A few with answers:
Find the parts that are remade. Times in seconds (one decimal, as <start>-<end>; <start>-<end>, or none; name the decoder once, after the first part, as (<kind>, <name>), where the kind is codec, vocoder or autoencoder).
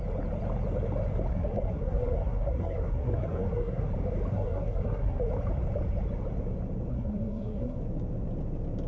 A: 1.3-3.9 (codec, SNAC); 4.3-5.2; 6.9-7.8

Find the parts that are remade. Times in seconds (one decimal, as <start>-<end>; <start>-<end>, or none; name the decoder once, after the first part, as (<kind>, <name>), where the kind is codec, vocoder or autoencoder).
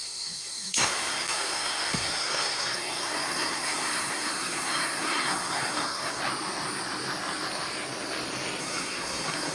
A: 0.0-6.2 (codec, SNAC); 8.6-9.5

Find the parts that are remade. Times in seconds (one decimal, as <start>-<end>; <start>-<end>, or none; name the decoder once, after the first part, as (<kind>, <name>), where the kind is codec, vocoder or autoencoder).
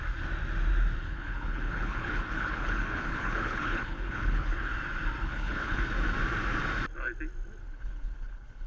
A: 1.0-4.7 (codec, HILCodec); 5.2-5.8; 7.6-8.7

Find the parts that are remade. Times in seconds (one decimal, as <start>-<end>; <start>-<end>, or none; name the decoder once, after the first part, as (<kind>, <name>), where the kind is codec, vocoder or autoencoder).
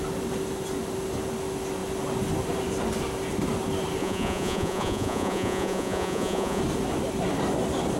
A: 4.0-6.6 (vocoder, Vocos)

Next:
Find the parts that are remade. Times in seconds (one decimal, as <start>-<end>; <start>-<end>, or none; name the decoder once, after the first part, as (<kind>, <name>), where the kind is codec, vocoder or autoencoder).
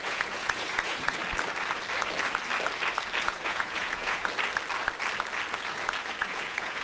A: 0.0-1.2 (vocoder, Vocos); 3.2-4.2; 6.2-6.8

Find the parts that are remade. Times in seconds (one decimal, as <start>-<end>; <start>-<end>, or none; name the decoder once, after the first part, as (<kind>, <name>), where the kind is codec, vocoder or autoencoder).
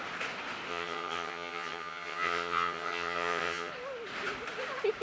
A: 0.7-3.7 (vocoder, HiFi-GAN)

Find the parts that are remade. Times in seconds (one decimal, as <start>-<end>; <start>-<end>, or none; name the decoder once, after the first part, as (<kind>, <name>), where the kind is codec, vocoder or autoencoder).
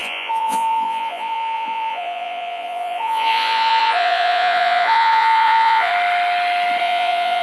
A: 0.0-5.9 (vocoder, Vocos); 6.8-7.4